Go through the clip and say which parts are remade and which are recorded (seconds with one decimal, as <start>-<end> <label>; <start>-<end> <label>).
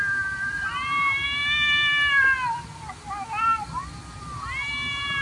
0.0-5.2 recorded